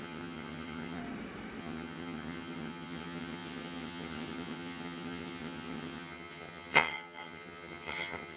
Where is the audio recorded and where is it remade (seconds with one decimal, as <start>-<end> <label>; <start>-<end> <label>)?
0.0-1.0 remade; 1.0-1.6 recorded; 1.6-8.4 remade